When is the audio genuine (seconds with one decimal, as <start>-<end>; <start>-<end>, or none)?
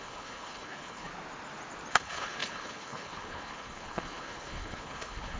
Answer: 1.1-1.9